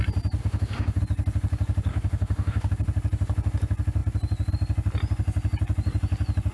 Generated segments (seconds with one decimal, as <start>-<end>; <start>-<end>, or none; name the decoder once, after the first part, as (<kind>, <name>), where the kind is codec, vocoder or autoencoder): 0.4-1.0 (autoencoder, DAC-VAE); 1.9-2.7